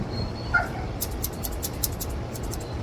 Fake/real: real